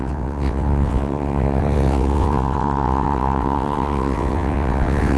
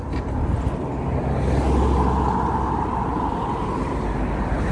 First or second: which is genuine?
second